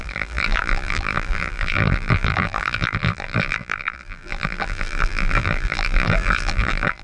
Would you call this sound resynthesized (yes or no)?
yes